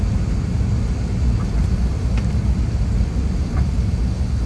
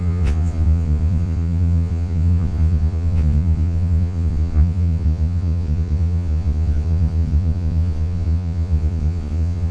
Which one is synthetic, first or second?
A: second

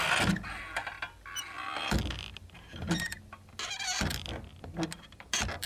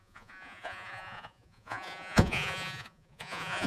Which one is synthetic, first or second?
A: second